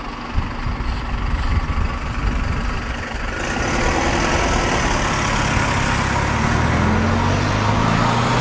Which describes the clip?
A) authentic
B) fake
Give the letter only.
A